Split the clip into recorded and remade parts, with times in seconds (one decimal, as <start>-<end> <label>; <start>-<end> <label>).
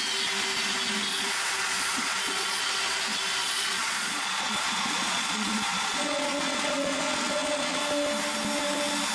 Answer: 0.0-1.1 recorded; 1.1-2.6 remade; 2.6-3.4 recorded; 3.4-7.8 remade; 7.8-9.1 recorded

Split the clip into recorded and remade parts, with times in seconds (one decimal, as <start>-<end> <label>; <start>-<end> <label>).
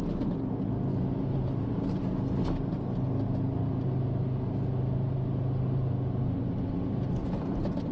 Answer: 0.0-7.9 recorded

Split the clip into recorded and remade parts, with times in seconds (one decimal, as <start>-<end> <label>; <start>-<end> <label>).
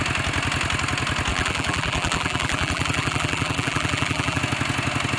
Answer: 0.0-1.3 recorded; 1.3-4.4 remade; 4.4-5.2 recorded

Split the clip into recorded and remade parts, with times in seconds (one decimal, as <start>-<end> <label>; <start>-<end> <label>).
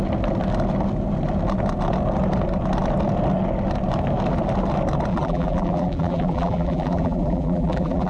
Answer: 0.0-5.1 recorded; 5.1-8.1 remade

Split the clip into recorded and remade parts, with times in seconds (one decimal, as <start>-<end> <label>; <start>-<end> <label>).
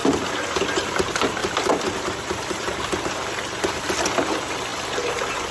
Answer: 0.0-5.5 recorded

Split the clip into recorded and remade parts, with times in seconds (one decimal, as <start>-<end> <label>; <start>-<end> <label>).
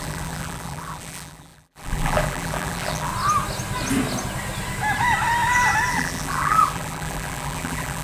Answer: 0.0-3.1 remade; 3.1-5.9 recorded; 5.9-8.0 remade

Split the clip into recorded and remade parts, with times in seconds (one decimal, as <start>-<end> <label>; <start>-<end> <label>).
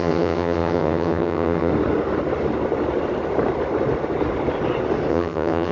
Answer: 0.0-1.7 remade; 1.7-5.1 recorded; 5.1-5.7 remade